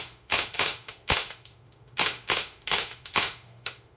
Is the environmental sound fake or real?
fake